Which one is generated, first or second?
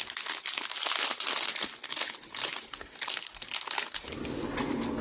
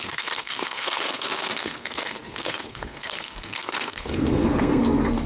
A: second